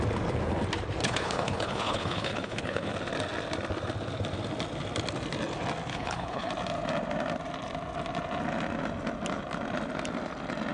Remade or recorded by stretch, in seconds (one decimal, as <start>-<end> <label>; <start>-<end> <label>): 0.0-1.0 recorded; 1.0-2.9 remade; 2.9-5.9 recorded; 5.9-6.5 remade; 6.5-10.7 recorded